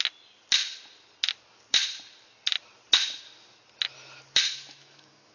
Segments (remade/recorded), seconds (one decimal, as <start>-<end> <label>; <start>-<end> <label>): 0.0-4.5 recorded; 4.5-5.3 remade